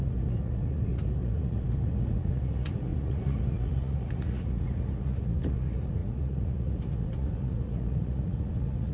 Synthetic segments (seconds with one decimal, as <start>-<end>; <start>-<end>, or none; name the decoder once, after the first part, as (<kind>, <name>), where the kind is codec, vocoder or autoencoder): 0.0-8.9 (vocoder, Vocos)